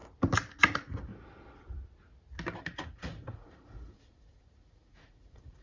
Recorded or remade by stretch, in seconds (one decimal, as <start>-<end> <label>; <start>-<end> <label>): 0.0-0.6 recorded; 0.6-1.1 remade; 1.1-2.6 recorded; 2.6-5.6 remade